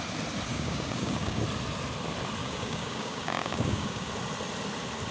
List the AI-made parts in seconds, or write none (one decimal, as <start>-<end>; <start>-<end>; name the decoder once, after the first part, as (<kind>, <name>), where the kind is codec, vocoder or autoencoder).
0.5-1.4 (codec, DAC); 2.4-4.1

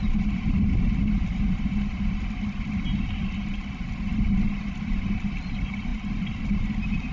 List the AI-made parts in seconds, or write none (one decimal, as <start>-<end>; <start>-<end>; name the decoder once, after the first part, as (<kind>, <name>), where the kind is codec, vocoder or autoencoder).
none

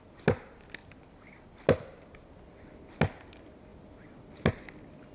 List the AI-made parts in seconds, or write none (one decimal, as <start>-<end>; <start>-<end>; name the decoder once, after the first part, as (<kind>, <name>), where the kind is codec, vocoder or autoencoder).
none

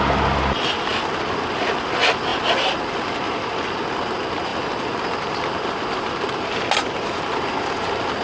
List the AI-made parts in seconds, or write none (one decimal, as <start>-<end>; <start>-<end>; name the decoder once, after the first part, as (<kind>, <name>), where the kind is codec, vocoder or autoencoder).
none

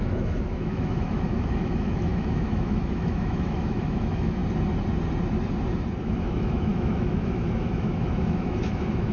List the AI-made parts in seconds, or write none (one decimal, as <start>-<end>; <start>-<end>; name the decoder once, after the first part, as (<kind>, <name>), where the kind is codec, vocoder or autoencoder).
0.0-4.4 (autoencoder, DAC-VAE); 6.0-9.1